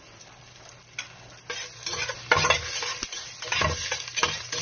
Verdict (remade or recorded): recorded